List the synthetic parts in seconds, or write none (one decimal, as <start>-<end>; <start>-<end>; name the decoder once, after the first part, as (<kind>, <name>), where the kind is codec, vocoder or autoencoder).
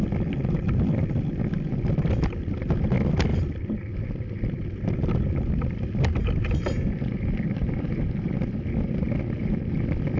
none